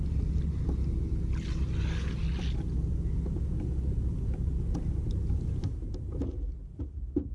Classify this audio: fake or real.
real